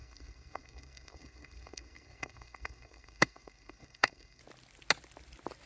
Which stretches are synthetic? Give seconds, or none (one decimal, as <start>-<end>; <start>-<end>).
0.0-4.4